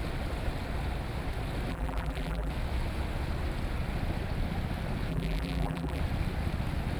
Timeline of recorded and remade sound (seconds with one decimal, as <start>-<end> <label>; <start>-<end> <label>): 0.0-1.7 recorded; 1.7-2.5 remade; 2.5-5.1 recorded; 5.1-6.0 remade; 6.0-7.0 recorded